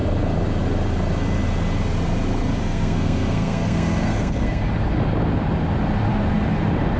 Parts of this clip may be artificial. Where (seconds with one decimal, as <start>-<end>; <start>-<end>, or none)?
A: 2.6-4.6